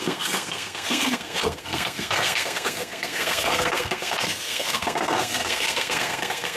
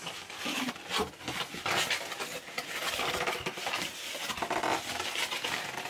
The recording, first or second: second